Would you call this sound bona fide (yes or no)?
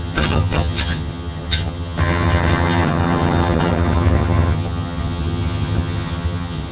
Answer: no